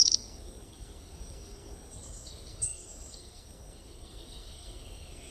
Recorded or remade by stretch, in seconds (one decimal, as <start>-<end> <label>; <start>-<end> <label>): 0.0-5.3 remade